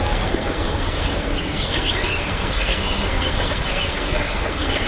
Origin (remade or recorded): remade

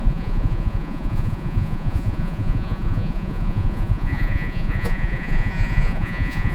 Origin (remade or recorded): remade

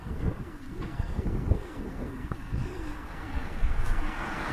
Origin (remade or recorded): remade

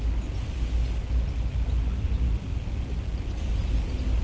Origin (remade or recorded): recorded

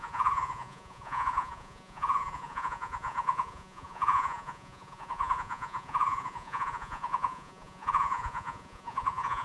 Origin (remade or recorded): remade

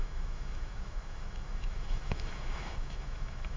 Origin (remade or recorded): remade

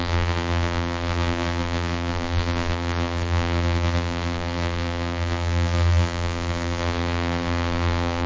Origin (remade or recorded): remade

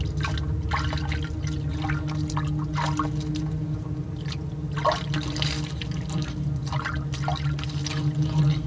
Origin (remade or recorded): recorded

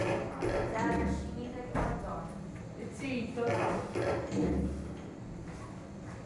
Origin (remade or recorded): recorded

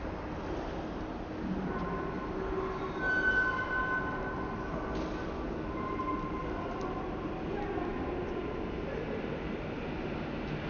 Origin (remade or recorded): recorded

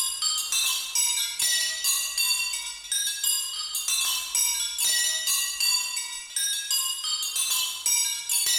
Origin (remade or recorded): recorded